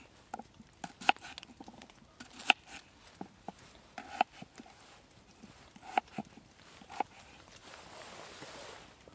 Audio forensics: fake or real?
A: real